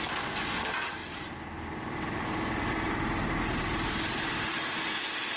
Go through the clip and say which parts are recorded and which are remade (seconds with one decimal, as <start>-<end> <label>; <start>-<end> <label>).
0.0-5.4 recorded